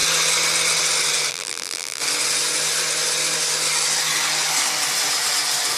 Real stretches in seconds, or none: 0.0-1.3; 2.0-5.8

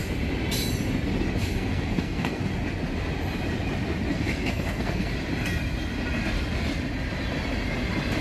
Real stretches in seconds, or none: 0.0-1.4; 2.4-4.1; 5.1-8.2

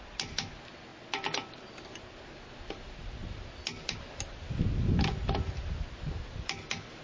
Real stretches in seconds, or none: 0.0-7.0

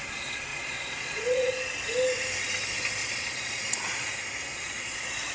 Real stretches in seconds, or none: 0.0-0.5; 1.5-3.0; 4.1-4.5

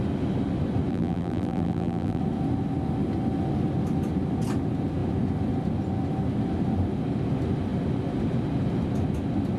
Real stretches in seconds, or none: 0.0-0.9; 2.2-9.6

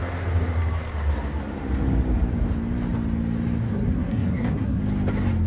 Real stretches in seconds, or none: 0.0-3.6; 4.8-5.5

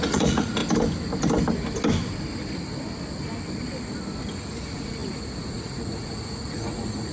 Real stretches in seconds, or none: 0.6-4.3